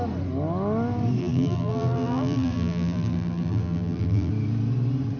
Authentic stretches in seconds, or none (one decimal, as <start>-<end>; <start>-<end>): 0.0-1.2; 4.3-5.2